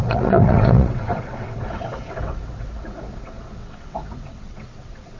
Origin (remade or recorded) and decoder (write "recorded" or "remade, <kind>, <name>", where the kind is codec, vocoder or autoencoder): remade, vocoder, WaveNeXt